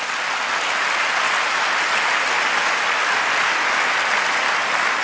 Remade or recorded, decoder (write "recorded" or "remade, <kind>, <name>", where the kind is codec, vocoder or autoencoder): recorded